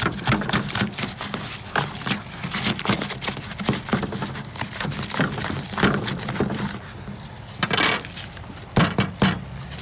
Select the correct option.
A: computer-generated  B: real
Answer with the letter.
B